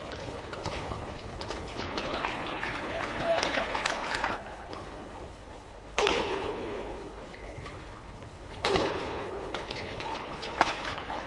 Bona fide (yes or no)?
no